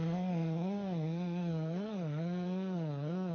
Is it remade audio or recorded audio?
remade